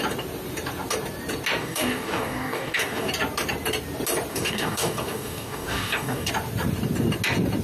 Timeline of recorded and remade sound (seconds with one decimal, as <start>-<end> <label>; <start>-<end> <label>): 0.0-1.6 recorded; 1.6-3.1 remade; 3.1-4.3 recorded; 4.3-6.3 remade; 6.3-7.6 recorded